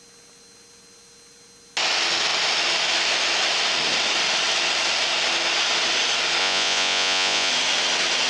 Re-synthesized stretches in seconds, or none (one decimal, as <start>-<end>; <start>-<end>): 6.4-7.5